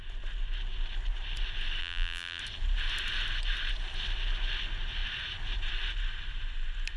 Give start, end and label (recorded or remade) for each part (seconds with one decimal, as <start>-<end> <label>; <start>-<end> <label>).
0.0-1.8 recorded; 1.8-2.4 remade; 2.4-7.0 recorded